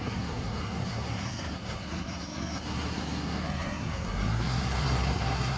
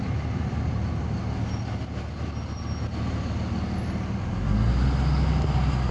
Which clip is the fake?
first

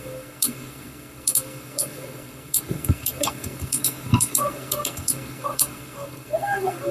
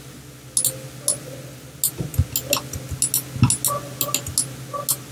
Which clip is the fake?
first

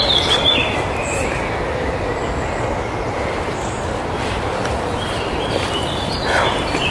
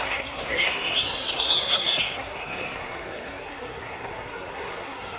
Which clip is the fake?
second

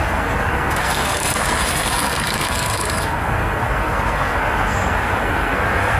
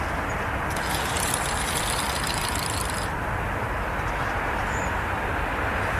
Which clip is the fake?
first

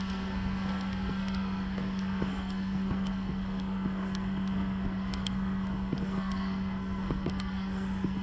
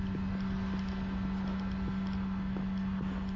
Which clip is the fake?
first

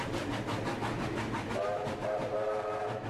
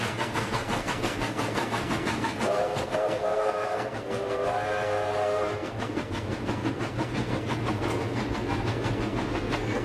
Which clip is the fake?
second